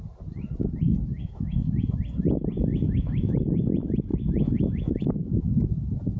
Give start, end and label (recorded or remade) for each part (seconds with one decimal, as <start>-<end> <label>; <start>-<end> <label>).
0.0-1.1 recorded; 1.1-1.9 remade; 1.9-2.7 recorded; 2.7-3.6 remade; 3.6-4.1 recorded; 4.1-5.5 remade; 5.5-6.2 recorded